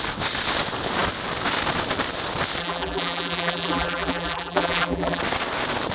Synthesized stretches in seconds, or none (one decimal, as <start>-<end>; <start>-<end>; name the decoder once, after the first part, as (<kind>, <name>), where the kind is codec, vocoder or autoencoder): 2.6-5.2 (vocoder, BigVGAN v2)

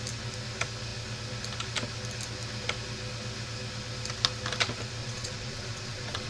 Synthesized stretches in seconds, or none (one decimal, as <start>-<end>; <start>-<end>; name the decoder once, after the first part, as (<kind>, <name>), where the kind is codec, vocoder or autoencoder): 5.0-6.3 (vocoder, Vocos)

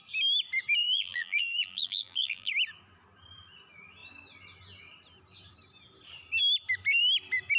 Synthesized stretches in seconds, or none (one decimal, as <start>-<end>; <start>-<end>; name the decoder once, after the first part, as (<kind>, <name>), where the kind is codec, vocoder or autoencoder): 0.8-2.5 (vocoder, BigVGAN v2)

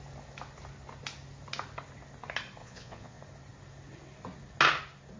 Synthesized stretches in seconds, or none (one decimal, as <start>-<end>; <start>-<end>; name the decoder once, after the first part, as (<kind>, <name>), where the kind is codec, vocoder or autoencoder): 2.6-3.2 (vocoder, Vocos)

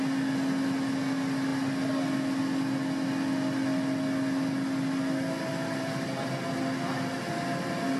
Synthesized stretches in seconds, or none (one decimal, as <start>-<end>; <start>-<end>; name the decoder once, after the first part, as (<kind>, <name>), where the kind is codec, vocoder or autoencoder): none

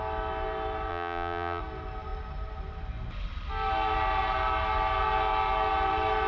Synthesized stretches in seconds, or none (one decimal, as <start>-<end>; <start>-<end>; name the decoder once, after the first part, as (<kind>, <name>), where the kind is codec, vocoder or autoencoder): 0.9-1.6 (vocoder, BigVGAN v2)

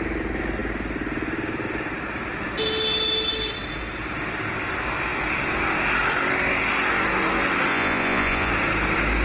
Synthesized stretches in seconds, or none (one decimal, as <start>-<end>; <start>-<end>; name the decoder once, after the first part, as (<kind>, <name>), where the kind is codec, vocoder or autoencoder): 7.7-8.5 (vocoder, Vocos)

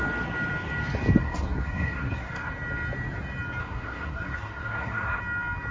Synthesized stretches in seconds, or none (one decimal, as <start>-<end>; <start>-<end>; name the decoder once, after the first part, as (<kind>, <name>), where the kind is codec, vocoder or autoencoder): 1.2-2.5 (codec, SNAC); 3.6-5.2